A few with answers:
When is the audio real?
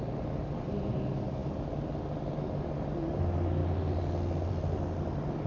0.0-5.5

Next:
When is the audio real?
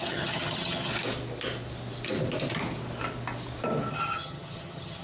0.9-3.9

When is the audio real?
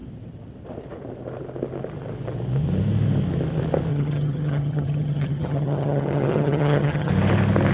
0.0-3.9; 7.1-7.7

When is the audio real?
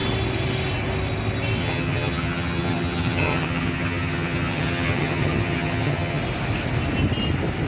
0.0-1.6; 6.2-7.7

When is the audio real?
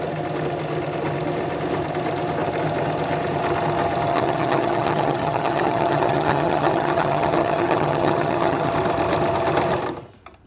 0.0-4.1; 8.7-10.5